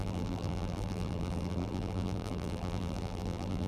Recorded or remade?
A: remade